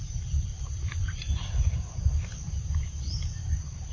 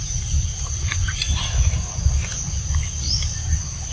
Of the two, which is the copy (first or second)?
first